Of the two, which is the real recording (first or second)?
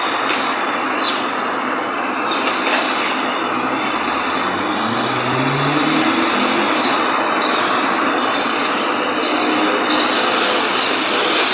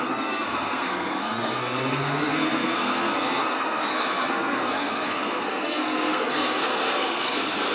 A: first